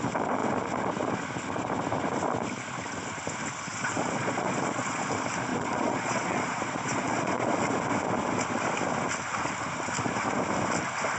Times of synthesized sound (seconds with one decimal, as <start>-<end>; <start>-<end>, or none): 3.7-5.1; 5.5-7.6